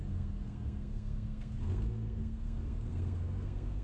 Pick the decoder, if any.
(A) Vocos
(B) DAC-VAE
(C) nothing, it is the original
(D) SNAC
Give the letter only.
D